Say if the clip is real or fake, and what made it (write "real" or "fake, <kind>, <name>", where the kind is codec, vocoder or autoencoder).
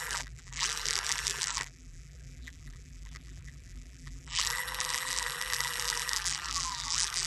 fake, vocoder, BigVGAN v2